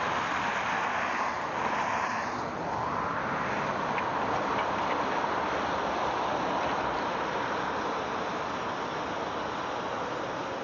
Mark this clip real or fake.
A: real